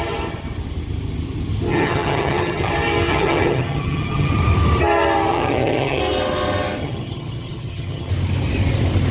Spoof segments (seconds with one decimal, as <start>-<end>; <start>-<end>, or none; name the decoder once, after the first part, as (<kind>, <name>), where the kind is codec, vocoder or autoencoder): 1.7-2.7 (vocoder, HiFi-GAN); 3.1-4.3; 5.3-6.0; 6.8-8.1

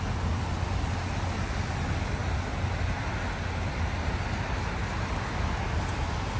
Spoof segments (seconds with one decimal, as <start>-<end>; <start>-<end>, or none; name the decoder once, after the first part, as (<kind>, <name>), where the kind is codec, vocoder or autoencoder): none

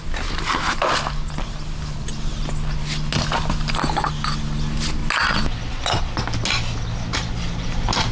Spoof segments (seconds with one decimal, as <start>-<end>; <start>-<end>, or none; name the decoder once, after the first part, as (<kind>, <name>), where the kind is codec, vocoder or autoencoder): none

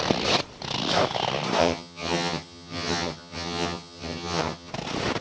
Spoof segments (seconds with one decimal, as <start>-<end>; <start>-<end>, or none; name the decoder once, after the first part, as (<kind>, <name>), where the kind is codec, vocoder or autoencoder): 1.6-4.7 (vocoder, HiFi-GAN)